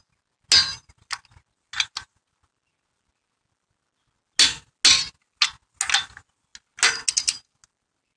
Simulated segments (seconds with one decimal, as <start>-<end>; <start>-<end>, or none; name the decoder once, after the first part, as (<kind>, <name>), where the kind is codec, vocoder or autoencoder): none